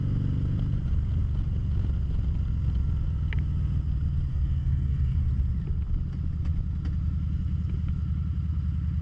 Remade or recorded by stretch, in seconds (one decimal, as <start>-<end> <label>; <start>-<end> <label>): 0.0-4.3 recorded; 4.3-5.2 remade; 5.2-9.0 recorded